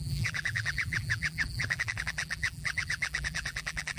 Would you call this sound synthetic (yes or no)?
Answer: yes